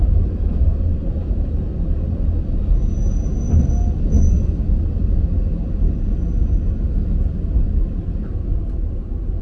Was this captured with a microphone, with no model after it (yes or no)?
yes